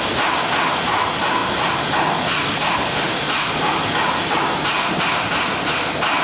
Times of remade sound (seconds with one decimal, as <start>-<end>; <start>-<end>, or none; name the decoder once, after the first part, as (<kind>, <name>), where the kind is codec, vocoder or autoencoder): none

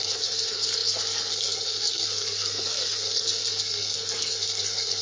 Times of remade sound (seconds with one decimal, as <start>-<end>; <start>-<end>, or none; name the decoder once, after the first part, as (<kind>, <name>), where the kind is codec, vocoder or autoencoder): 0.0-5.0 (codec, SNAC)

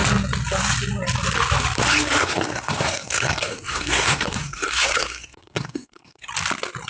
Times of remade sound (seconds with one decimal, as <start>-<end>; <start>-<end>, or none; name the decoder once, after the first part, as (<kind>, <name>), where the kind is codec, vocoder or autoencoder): 2.2-6.3 (codec, SNAC)